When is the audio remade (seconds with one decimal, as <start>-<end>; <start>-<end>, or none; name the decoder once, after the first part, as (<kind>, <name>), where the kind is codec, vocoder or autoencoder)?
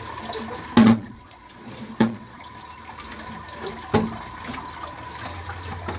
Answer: 0.8-2.4 (vocoder, Vocos)